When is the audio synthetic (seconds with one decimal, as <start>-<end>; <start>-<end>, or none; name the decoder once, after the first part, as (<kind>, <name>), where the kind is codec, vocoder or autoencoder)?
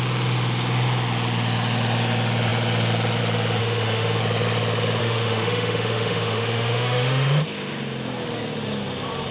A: 3.6-4.2 (autoencoder, DAC-VAE); 5.0-7.4